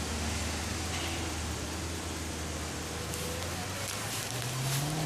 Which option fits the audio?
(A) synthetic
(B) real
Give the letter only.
B